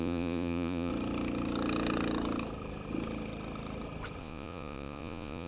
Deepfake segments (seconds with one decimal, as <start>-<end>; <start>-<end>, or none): 0.0-0.9; 4.2-5.5